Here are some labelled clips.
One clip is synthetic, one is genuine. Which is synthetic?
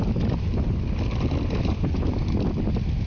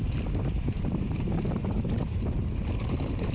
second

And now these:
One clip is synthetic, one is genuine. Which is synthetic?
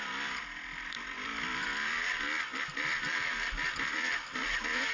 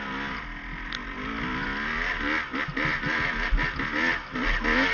first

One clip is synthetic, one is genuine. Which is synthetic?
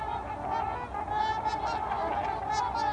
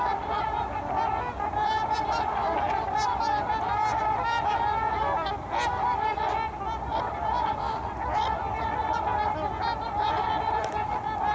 second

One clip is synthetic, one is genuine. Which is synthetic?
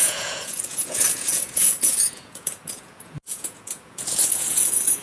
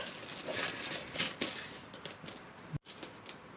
first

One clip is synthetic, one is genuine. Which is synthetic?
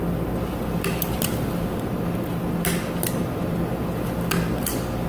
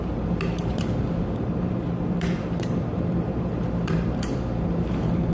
second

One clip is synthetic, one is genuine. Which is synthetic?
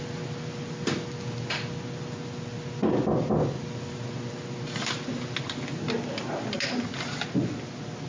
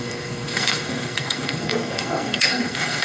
second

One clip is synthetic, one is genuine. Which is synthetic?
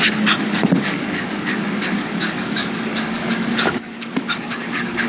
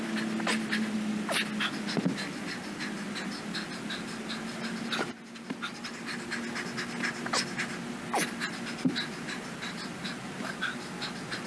first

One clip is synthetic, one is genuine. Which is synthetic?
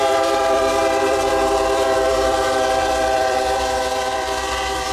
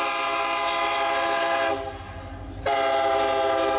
first